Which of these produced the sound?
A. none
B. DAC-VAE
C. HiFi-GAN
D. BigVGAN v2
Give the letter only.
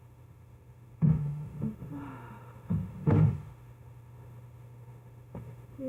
B